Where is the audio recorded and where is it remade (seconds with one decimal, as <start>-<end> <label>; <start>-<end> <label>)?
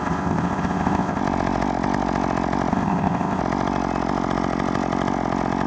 0.0-1.2 remade; 1.2-2.7 recorded; 2.7-3.4 remade; 3.4-5.7 recorded